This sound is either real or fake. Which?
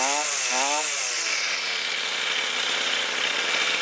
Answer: real